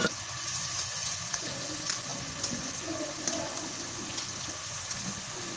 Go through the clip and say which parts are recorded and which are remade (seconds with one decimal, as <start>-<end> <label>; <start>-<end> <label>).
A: 0.0-5.6 remade